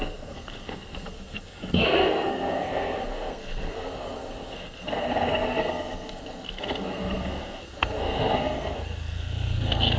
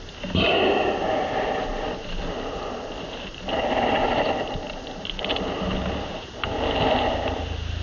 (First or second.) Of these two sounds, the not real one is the first